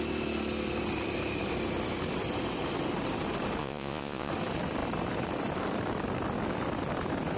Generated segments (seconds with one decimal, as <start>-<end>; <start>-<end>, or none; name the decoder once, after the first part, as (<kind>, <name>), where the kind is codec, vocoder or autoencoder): 3.6-4.3 (vocoder, Vocos)